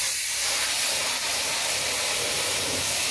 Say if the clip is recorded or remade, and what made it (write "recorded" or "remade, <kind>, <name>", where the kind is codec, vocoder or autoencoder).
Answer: recorded